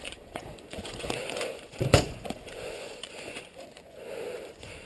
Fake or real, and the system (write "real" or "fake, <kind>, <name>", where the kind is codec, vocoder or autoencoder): fake, vocoder, Vocos